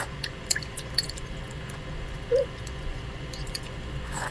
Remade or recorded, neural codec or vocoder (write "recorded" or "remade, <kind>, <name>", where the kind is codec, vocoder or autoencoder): remade, vocoder, Vocos